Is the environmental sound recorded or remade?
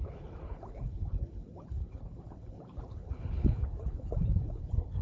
remade